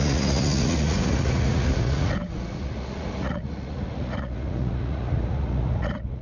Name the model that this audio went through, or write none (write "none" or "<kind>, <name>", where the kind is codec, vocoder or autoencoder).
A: vocoder, Vocos